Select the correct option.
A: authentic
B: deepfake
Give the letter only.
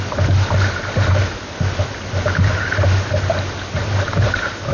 A